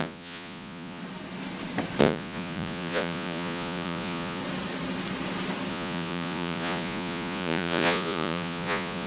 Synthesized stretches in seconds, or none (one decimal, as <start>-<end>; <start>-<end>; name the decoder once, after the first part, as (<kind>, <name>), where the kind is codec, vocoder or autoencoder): 0.0-1.0 (vocoder, Vocos); 2.0-4.4; 5.7-9.1